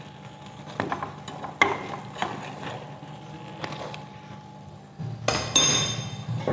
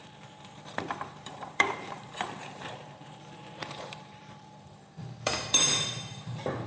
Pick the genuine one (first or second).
first